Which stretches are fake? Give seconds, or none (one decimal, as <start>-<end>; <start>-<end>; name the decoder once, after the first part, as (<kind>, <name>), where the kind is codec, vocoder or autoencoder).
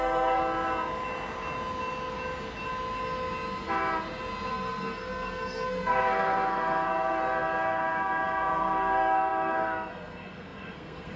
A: 0.0-0.4 (codec, SNAC); 4.5-11.2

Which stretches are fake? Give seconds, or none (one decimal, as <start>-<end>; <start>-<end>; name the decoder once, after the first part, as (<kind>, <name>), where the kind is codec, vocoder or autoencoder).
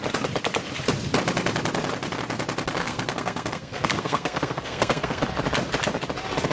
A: 2.8-5.2 (codec, SNAC)